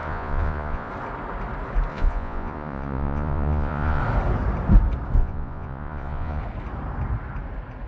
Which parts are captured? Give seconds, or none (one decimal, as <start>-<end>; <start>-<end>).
0.9-1.9; 4.0-5.2; 6.4-7.9